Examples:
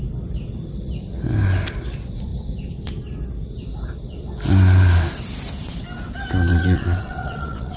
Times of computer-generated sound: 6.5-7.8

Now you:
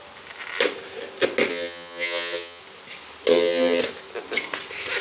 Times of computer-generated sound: 1.5-2.6; 3.3-3.8

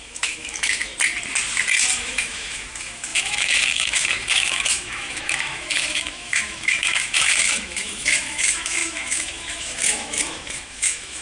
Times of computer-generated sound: 0.0-0.9; 2.0-11.2

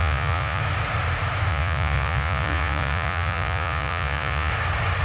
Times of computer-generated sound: 0.0-0.6; 1.5-4.5

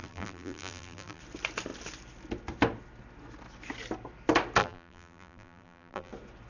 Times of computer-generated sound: 0.0-1.2; 4.6-6.1

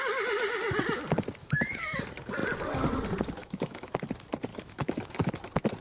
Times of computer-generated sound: 1.4-2.0; 3.4-3.9; 4.5-5.3